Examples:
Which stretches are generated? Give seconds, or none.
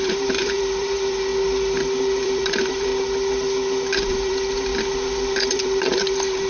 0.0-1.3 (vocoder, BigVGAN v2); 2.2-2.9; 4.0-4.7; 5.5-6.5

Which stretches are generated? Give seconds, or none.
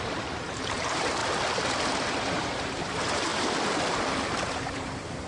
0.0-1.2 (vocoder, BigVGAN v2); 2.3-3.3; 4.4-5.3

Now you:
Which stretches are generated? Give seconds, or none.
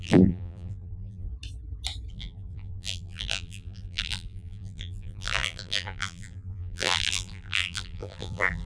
0.0-1.3 (vocoder, BigVGAN v2); 2.1-8.7